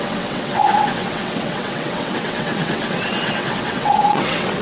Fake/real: fake